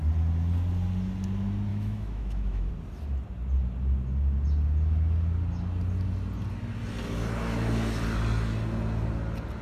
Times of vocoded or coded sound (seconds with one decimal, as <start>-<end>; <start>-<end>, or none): 1.7-2.7